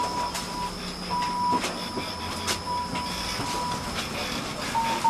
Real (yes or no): yes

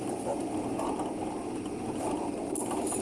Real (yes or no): yes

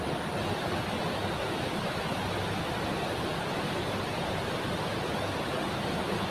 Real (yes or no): yes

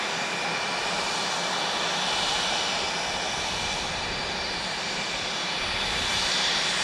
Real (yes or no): yes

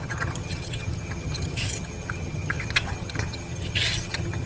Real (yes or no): no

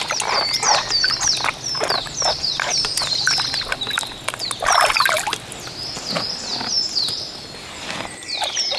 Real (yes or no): yes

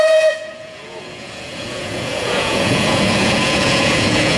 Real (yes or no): no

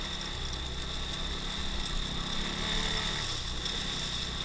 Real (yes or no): yes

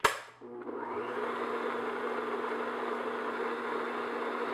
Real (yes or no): yes